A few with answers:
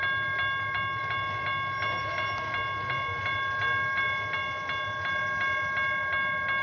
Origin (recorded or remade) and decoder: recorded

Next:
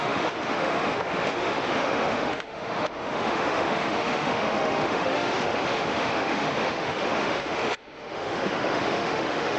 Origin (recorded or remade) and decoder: remade, autoencoder, DAC-VAE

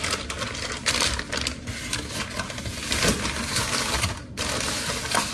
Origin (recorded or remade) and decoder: recorded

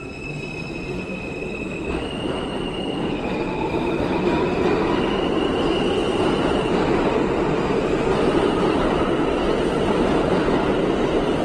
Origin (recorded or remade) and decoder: recorded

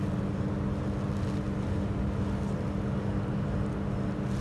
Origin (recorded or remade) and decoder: recorded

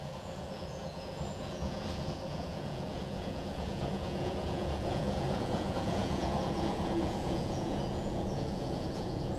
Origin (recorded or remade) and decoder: remade, vocoder, Vocos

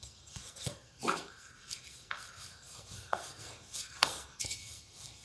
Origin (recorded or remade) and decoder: remade, codec, SNAC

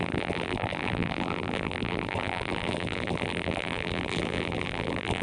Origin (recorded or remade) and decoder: remade, vocoder, BigVGAN v2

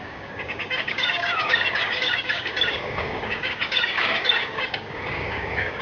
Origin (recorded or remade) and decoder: remade, codec, DAC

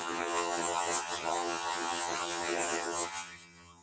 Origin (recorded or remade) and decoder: remade, vocoder, HiFi-GAN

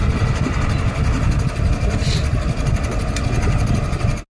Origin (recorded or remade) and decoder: recorded